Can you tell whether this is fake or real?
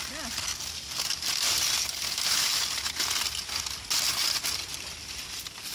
real